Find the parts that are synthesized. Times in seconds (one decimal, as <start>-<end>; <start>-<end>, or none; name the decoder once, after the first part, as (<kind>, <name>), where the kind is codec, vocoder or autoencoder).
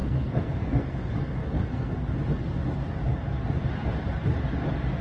0.0-1.9 (codec, SNAC)